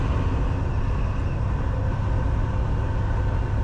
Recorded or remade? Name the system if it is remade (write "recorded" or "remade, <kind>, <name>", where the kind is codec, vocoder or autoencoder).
recorded